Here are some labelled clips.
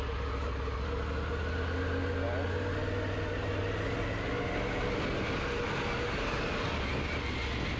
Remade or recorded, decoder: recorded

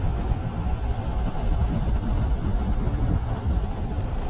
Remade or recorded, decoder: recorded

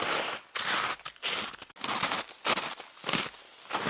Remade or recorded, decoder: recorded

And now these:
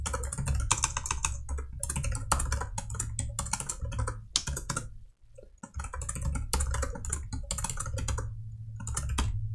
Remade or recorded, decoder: recorded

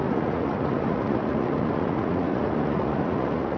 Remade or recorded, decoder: remade, vocoder, Vocos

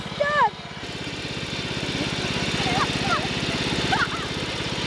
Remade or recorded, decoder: recorded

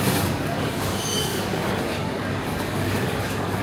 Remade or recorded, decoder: remade, codec, DAC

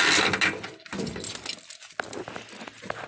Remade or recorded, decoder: recorded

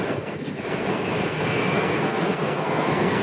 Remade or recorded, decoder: remade, codec, SNAC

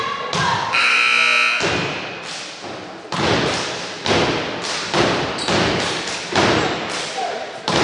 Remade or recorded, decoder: recorded